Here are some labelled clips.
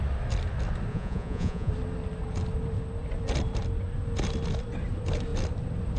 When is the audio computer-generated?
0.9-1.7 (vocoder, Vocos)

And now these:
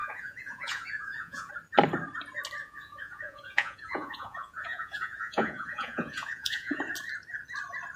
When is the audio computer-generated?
0.0-1.5 (vocoder, Vocos); 2.6-6.8

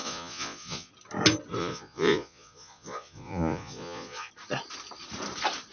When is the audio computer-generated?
0.0-0.9 (vocoder, Vocos); 1.6-4.3

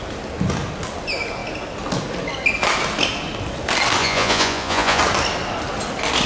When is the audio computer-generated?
4.0-5.0 (vocoder, Vocos)